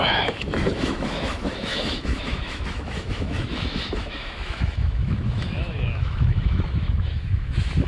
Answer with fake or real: fake